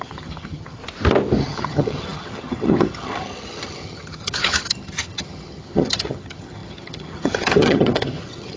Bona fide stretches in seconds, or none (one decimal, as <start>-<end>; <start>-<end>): 0.8-1.4

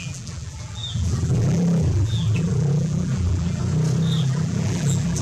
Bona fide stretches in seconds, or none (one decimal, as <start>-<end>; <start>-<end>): 3.6-4.2

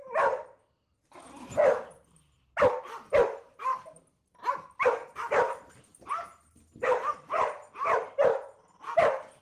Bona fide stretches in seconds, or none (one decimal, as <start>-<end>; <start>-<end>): 0.0-3.7; 4.5-5.9; 7.3-9.4

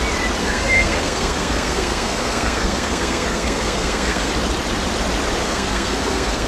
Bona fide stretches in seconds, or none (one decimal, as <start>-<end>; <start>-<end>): 0.0-0.4; 4.3-5.4

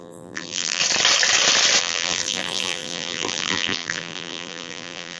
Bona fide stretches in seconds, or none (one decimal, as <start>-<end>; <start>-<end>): 0.8-1.8

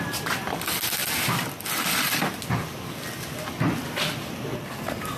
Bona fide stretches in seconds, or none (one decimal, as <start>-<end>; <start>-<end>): 0.0-5.2

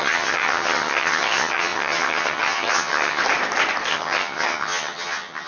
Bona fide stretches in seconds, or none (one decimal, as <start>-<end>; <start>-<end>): 3.2-3.9

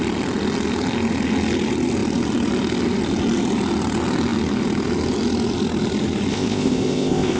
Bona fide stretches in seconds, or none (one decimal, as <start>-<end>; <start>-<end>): 0.0-6.3